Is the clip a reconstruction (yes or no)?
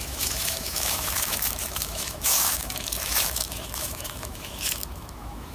yes